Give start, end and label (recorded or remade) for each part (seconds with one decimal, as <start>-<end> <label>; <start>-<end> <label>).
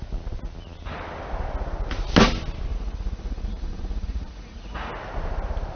0.0-2.7 recorded; 2.7-4.9 remade; 4.9-5.8 recorded